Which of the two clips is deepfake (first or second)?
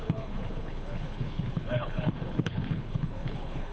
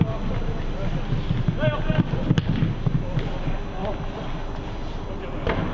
first